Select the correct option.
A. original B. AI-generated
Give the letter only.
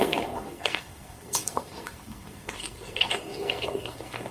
B